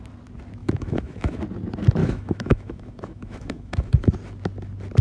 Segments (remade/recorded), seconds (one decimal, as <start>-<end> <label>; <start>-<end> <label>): 0.0-0.6 recorded; 0.6-1.4 remade; 1.4-2.0 recorded; 2.0-4.1 remade; 4.1-5.0 recorded